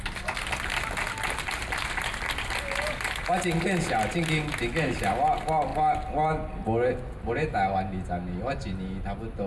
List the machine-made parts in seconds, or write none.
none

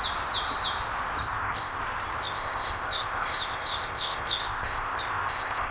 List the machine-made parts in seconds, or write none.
1.2-1.8; 2.2-5.7

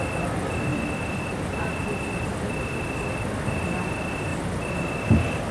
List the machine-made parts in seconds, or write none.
none

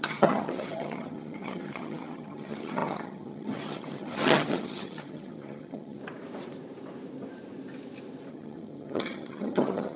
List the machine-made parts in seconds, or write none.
0.0-6.0; 8.3-10.0

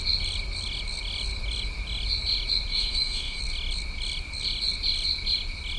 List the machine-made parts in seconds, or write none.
2.7-3.4

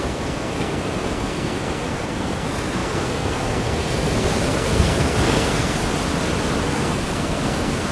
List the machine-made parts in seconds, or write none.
0.0-5.8; 6.6-7.9

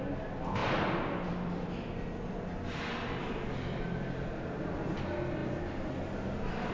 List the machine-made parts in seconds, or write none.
none